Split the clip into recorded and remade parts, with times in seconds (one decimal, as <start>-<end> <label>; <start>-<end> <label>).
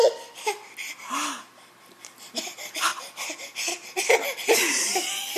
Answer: 0.0-2.0 recorded; 2.0-2.9 remade; 2.9-3.9 recorded; 3.9-5.4 remade